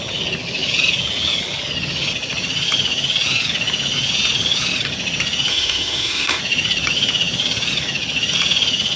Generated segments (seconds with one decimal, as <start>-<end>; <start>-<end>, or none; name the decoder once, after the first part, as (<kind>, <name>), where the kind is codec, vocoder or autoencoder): 5.5-6.4 (autoencoder, DAC-VAE)